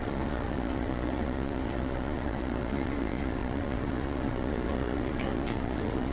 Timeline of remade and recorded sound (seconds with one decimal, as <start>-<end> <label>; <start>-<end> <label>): 0.0-6.1 remade